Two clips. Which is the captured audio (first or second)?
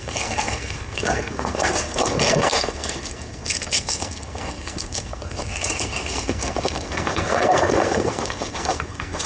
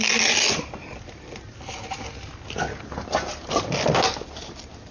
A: second